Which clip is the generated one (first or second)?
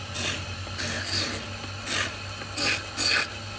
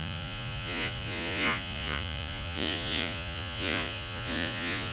second